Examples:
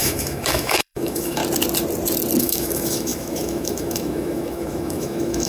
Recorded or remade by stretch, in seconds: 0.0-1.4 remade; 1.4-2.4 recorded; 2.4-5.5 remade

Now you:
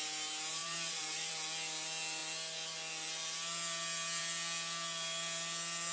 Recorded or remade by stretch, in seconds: 0.0-0.6 recorded; 0.6-1.3 remade; 1.3-5.9 recorded

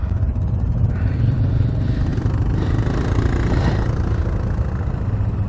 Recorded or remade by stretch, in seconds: 0.0-2.1 remade; 2.1-5.5 recorded

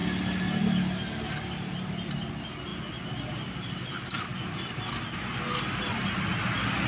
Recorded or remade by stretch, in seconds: 0.0-6.9 recorded

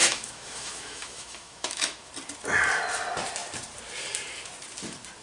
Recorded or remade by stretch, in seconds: 0.0-2.1 remade; 2.1-5.2 recorded